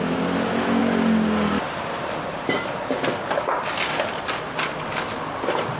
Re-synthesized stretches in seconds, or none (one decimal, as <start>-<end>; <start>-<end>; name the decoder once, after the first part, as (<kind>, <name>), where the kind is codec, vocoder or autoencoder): none